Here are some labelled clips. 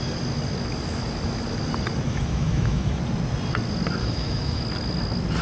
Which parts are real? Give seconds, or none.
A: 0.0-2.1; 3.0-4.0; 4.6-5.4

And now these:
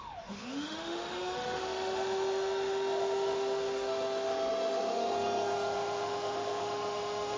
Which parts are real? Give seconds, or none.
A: none

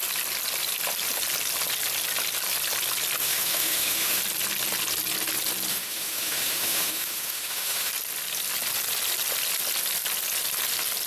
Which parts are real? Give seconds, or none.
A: 0.0-3.2; 4.2-5.7; 7.9-11.1

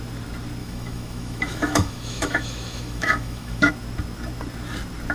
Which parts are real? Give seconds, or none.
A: 0.0-0.6; 3.7-5.1

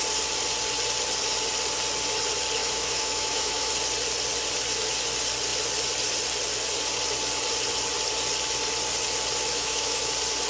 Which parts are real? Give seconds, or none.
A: 0.0-2.6; 3.7-9.5; 10.0-10.5

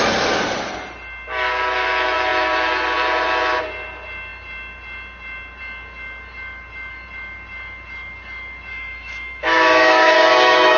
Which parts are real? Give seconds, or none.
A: 0.0-8.7

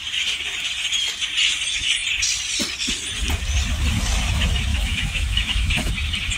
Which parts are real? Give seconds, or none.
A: 0.0-4.7; 5.9-6.4